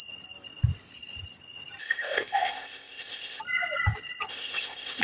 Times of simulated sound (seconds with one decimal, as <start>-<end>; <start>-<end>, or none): 1.8-3.4; 4.3-5.0